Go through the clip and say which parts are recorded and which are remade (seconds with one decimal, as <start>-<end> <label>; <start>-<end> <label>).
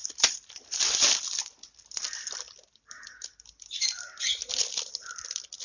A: 0.0-5.6 remade